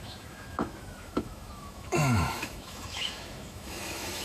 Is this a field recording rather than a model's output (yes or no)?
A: no